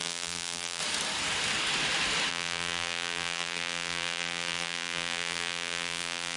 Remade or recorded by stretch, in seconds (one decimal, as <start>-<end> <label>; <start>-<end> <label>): 0.0-0.8 remade; 0.8-2.3 recorded; 2.3-6.4 remade